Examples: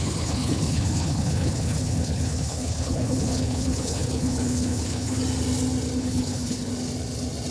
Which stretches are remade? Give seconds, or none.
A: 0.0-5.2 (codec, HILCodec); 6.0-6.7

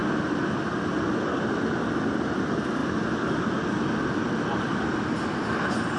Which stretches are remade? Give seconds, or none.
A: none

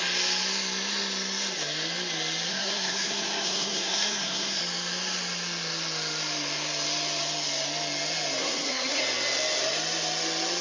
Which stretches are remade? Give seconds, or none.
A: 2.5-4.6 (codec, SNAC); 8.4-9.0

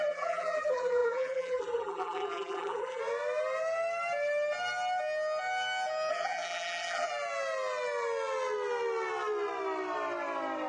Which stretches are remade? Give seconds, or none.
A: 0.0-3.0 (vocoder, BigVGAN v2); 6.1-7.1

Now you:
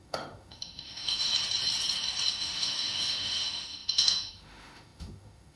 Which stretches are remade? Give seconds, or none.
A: 0.0-1.3 (autoencoder, DAC-VAE); 2.3-5.6

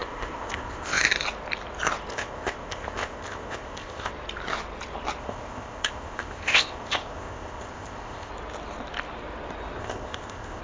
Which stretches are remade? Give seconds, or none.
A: 0.0-1.0 (codec, ZipCodec); 2.1-4.1; 5.2-8.3; 9.8-10.6